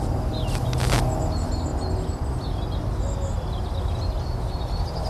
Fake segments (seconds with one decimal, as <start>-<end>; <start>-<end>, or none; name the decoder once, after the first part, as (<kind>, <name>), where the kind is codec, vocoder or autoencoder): none